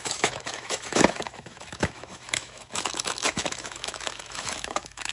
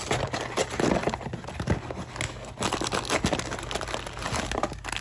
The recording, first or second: second